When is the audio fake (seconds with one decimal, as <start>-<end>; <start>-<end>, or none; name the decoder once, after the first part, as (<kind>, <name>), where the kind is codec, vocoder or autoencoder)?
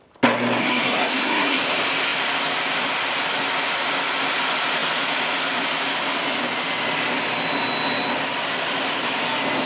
0.6-1.6 (codec, SNAC)